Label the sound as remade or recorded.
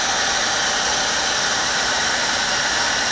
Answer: recorded